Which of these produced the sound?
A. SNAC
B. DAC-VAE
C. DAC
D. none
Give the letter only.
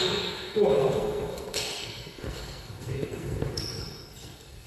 A